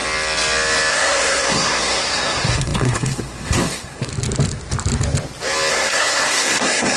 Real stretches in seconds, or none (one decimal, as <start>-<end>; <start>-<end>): 0.0-0.9; 4.1-5.7